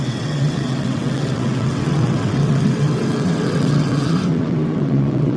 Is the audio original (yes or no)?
no